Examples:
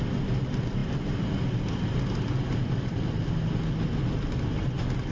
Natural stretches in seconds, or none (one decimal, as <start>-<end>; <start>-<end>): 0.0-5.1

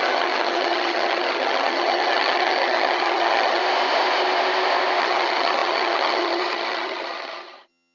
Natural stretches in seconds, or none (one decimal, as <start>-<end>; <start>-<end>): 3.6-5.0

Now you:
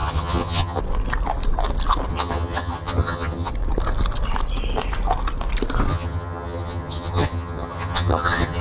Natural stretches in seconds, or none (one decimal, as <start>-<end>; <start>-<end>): 0.8-2.1; 3.5-5.9

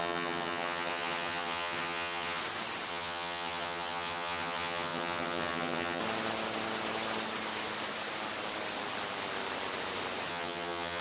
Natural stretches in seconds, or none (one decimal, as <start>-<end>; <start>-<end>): 2.4-2.9; 6.0-10.3

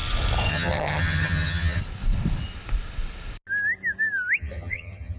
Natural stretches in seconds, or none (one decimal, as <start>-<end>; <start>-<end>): 0.0-0.5; 1.8-4.4

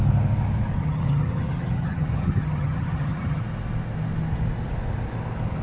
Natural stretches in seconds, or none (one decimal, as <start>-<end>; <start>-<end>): 0.0-0.8; 3.4-5.6